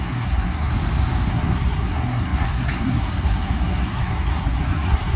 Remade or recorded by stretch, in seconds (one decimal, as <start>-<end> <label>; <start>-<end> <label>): 0.0-0.7 remade; 0.7-1.3 recorded; 1.3-5.2 remade